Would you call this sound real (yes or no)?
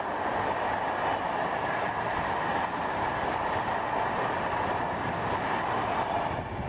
yes